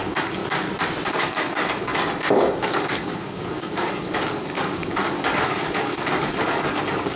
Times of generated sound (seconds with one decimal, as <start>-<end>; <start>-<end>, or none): 0.0-0.4; 1.1-1.9; 2.6-7.2

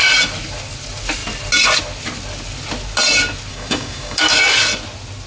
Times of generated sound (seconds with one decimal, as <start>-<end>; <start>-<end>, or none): 3.5-4.4